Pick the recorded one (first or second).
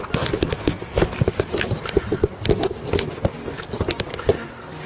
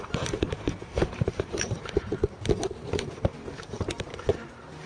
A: first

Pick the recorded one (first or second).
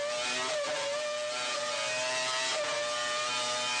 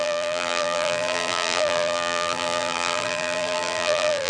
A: first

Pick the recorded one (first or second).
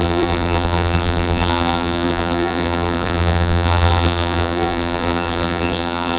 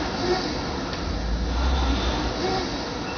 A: second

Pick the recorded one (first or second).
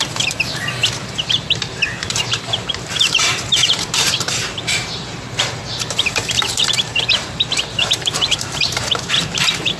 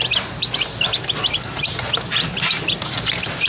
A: second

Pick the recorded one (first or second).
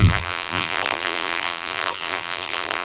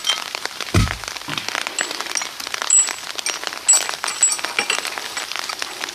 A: second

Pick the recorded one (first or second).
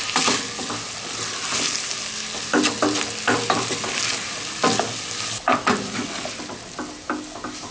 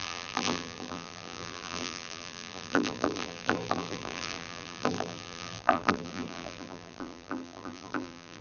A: first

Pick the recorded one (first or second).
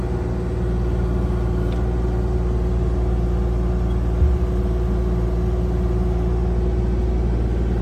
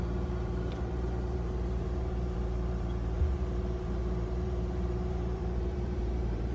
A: first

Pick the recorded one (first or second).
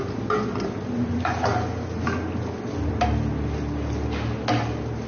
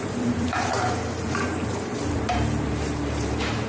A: first